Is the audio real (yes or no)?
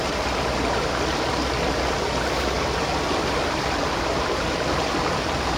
yes